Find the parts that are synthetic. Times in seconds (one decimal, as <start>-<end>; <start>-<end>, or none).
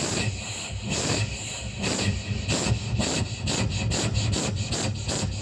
none